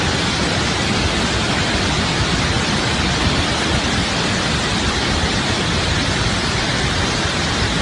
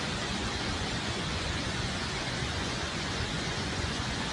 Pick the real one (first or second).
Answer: first